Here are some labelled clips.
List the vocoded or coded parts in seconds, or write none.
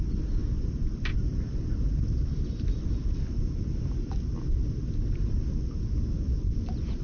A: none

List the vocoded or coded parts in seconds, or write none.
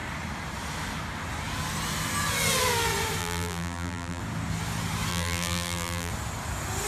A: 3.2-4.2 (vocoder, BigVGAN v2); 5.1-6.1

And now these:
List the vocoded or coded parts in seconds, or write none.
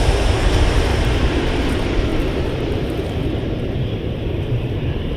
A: 0.0-0.9 (vocoder, BigVGAN v2); 1.7-5.2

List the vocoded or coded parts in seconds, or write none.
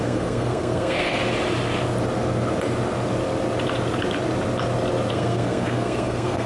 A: 0.0-1.2 (codec, SNAC); 5.1-6.5